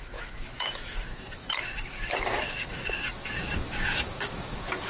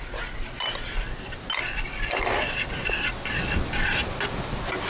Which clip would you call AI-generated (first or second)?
first